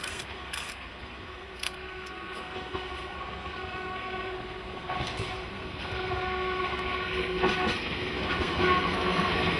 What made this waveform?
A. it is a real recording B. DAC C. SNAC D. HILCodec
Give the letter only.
C